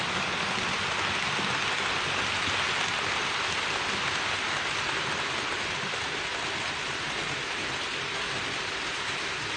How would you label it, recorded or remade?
recorded